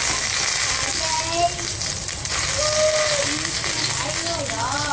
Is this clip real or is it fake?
real